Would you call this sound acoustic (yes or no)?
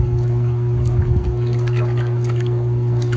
no